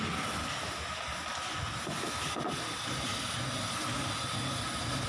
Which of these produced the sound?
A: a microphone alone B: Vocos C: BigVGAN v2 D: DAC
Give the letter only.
A